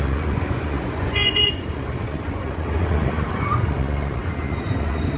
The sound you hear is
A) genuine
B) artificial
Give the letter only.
B